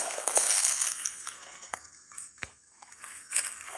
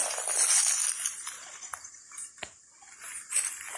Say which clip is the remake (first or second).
first